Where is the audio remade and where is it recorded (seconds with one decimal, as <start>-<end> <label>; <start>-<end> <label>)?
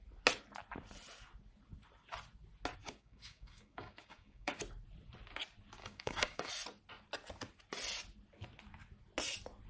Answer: 0.0-2.8 recorded; 2.8-4.6 remade; 4.6-5.8 recorded; 5.8-6.5 remade; 6.5-9.7 recorded